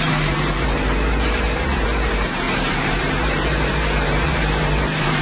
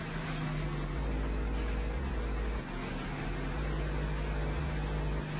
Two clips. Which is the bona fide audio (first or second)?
second